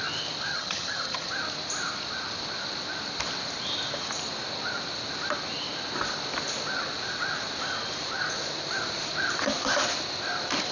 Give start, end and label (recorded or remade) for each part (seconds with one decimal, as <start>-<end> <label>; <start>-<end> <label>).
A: 0.0-0.5 recorded; 0.5-1.3 remade; 1.3-10.7 recorded